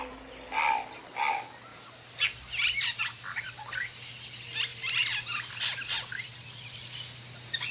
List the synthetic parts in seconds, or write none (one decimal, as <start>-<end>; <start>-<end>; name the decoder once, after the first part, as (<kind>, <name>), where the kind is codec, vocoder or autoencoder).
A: 1.7-3.0 (vocoder, BigVGAN v2); 4.7-5.5